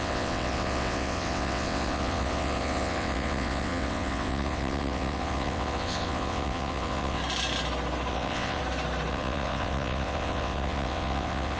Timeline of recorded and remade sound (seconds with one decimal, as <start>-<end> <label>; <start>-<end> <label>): 0.0-7.2 remade; 7.2-8.1 recorded; 8.1-8.6 remade; 8.6-9.1 recorded; 9.1-11.6 remade